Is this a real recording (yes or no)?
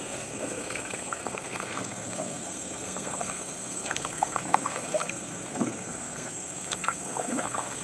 no